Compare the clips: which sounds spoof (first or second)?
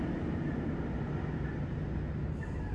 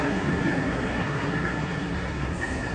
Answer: second